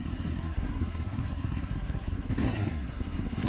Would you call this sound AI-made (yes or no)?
yes